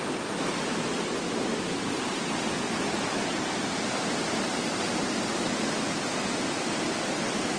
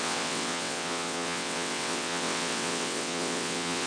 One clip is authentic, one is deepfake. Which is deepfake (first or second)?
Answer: second